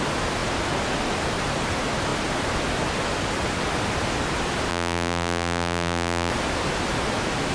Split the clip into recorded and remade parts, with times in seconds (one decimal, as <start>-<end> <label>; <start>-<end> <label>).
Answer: 0.0-4.7 recorded; 4.7-6.3 remade; 6.3-7.5 recorded